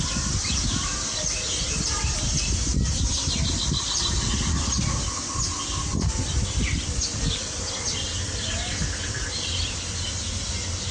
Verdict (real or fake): real